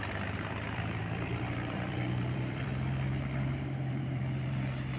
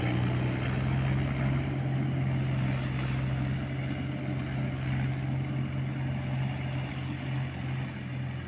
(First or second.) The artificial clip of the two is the first